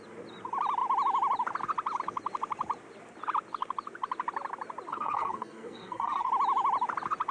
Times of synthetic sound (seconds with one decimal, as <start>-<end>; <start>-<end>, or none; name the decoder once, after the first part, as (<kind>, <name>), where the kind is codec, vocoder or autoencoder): 4.9-6.3 (codec, SNAC)